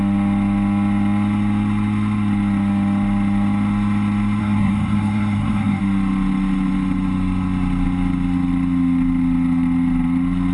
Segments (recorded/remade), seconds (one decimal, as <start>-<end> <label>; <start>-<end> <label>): 0.0-4.4 recorded; 4.4-5.8 remade; 5.8-10.5 recorded

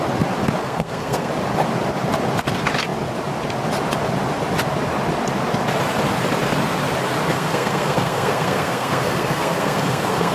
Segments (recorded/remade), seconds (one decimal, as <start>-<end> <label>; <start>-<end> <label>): 0.0-0.6 recorded; 0.6-1.3 remade; 1.3-7.3 recorded; 7.3-10.3 remade

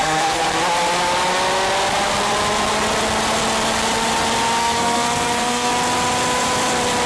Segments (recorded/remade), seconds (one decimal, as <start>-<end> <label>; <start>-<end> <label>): 0.0-0.4 remade; 0.4-4.6 recorded; 4.6-5.7 remade; 5.7-7.1 recorded

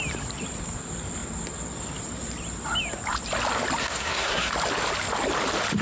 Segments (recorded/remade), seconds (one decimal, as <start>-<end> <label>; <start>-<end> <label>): 0.0-3.8 recorded; 3.8-4.5 remade; 4.5-5.8 recorded